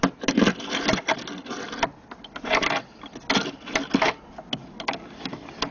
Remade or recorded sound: recorded